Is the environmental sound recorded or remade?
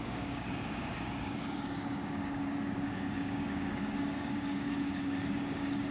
remade